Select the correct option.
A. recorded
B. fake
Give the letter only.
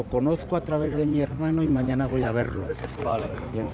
B